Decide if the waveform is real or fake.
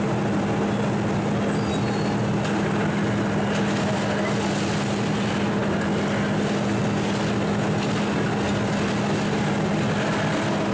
real